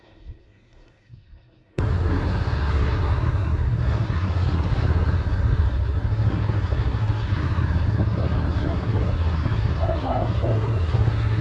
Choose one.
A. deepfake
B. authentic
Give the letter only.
A